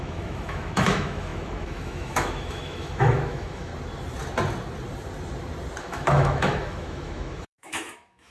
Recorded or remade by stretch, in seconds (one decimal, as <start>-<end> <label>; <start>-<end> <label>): 0.0-3.7 remade; 3.7-5.8 recorded; 5.8-8.3 remade